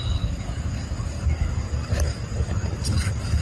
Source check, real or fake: real